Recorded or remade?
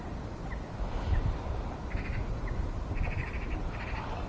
recorded